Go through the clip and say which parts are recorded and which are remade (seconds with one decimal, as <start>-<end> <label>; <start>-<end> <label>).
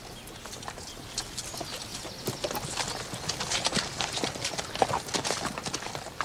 0.0-6.2 recorded